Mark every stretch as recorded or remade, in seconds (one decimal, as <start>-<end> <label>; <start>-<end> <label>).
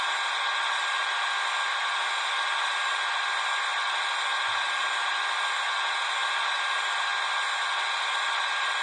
0.0-7.1 remade; 7.1-7.8 recorded; 7.8-8.8 remade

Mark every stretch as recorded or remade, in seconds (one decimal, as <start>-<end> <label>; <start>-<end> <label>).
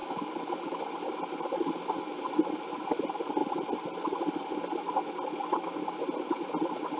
0.0-7.0 recorded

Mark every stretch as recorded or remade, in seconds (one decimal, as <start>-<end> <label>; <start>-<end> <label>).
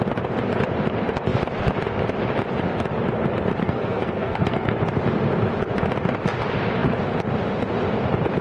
0.0-3.6 recorded; 3.6-4.7 remade; 4.7-8.4 recorded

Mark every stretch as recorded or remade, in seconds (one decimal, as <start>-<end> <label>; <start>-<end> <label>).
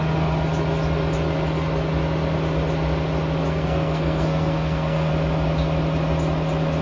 0.0-3.4 recorded; 3.4-5.1 remade; 5.1-6.8 recorded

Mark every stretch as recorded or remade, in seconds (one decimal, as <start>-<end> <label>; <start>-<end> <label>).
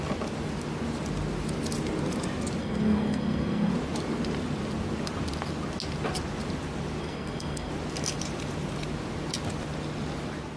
0.0-2.6 recorded; 2.6-3.7 remade; 3.7-7.0 recorded; 7.0-7.7 remade; 7.7-10.6 recorded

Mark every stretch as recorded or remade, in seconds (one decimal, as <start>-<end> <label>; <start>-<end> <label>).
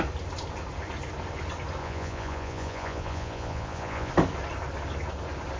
0.0-1.8 recorded; 1.8-4.1 remade; 4.1-5.6 recorded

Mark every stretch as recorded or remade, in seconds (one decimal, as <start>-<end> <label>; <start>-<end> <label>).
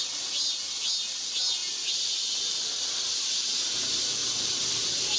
0.0-5.2 recorded